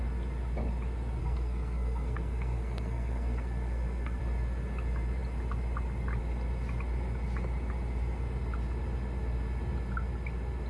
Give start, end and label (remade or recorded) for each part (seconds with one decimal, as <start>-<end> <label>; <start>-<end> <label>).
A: 0.0-1.2 recorded; 1.2-4.2 remade; 4.2-10.7 recorded

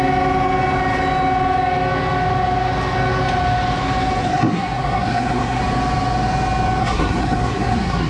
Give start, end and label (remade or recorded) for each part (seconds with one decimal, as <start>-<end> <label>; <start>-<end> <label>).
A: 0.0-4.2 recorded; 4.2-5.6 remade; 5.6-6.8 recorded; 6.8-8.1 remade

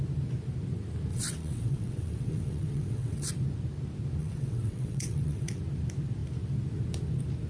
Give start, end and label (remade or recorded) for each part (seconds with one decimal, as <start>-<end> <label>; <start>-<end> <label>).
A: 0.0-1.1 recorded; 1.1-3.3 remade; 3.3-4.2 recorded; 4.2-5.6 remade; 5.6-7.5 recorded